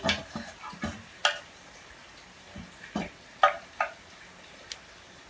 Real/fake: real